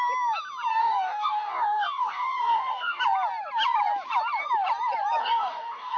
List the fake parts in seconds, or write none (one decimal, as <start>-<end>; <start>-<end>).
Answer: 0.7-3.0; 5.2-6.0